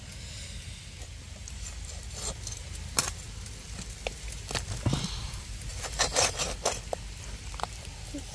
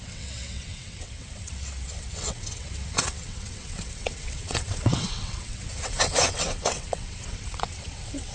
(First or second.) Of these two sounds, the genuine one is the first